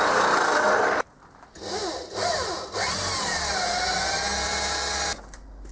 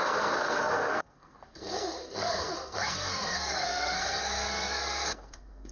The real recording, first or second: first